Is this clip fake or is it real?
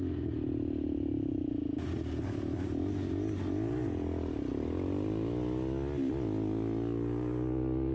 real